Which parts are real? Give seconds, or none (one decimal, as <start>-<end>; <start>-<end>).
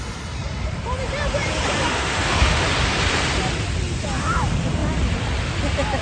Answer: 0.0-1.9; 2.6-6.0